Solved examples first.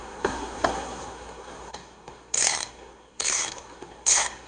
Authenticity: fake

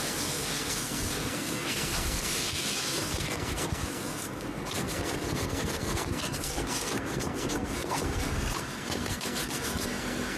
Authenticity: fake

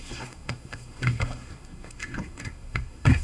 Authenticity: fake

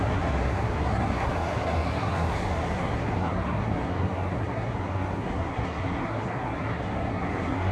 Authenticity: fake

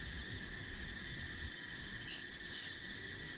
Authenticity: real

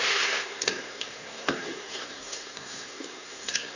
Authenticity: fake